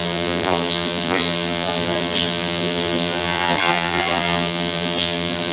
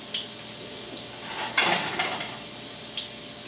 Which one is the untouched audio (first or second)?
second